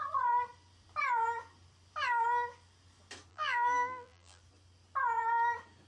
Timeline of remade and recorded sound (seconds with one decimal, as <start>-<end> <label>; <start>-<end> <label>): 0.0-3.3 recorded; 3.3-4.4 remade; 4.4-5.9 recorded